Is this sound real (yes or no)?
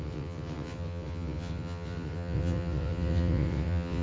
no